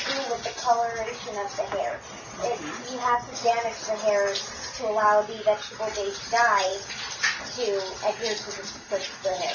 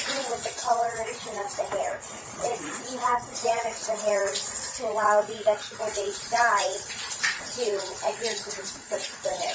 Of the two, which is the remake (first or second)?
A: second